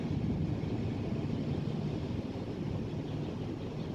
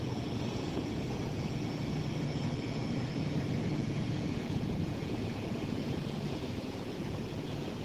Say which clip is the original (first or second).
first